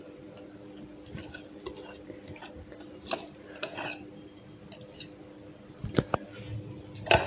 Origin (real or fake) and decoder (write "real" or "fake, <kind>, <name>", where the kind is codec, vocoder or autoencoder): real